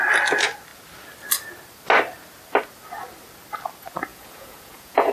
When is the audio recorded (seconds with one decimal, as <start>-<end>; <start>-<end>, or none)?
0.0-4.1